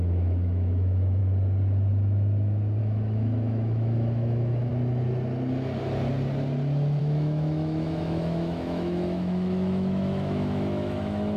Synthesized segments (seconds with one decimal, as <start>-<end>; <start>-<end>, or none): 0.0-1.2; 2.8-4.7; 7.0-11.4